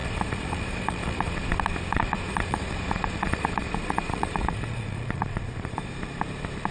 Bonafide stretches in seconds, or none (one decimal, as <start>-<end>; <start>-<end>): 1.5-1.9; 5.9-6.7